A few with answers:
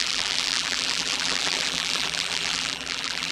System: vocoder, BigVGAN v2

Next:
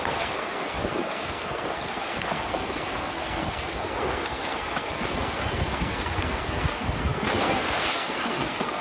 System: codec, SNAC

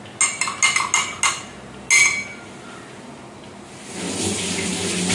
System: none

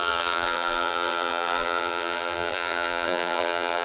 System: vocoder, BigVGAN v2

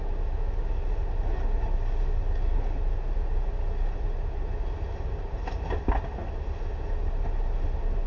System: none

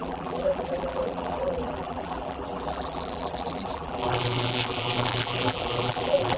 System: vocoder, BigVGAN v2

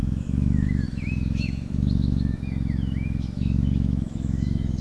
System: autoencoder, DAC-VAE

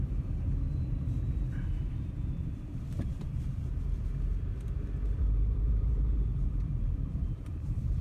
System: vocoder, BigVGAN v2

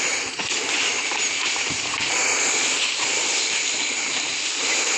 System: none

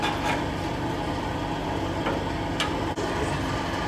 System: none